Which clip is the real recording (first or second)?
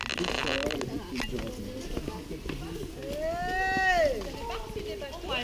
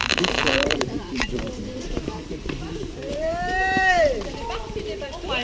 first